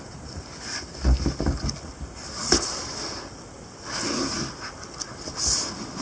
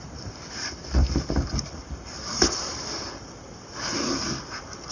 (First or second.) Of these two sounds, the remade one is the second